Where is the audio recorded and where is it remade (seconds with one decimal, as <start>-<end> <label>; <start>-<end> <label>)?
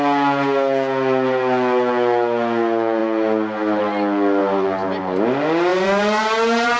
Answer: 0.0-4.4 recorded; 4.4-5.0 remade; 5.0-5.7 recorded; 5.7-6.8 remade